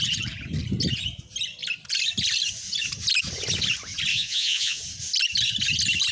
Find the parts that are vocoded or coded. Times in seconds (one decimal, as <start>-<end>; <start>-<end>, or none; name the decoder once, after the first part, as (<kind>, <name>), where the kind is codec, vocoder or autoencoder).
4.1-4.8 (vocoder, Vocos)